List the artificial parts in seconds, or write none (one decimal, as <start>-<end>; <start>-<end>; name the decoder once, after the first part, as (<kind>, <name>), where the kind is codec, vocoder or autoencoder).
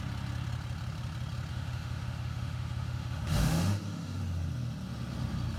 1.5-4.2 (autoencoder, DAC-VAE)